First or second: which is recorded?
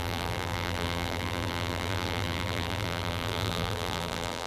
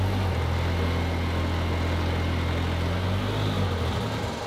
second